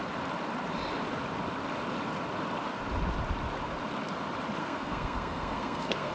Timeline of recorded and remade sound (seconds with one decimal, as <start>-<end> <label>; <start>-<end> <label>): 0.0-4.6 recorded; 4.6-6.1 remade